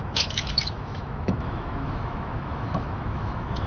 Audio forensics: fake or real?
fake